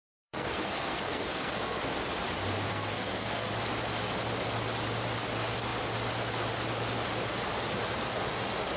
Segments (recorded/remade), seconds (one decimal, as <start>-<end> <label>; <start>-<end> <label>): 0.0-1.8 remade; 1.8-2.7 recorded; 2.7-3.5 remade; 3.5-8.8 recorded